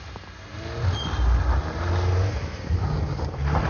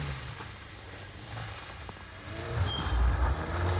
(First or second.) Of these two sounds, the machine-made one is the second